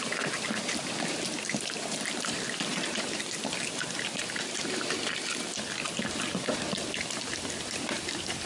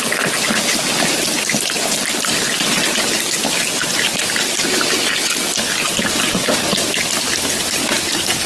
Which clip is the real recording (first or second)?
second